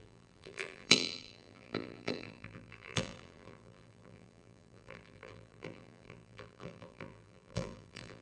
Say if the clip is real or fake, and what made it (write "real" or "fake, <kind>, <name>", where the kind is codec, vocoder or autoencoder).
fake, vocoder, BigVGAN v2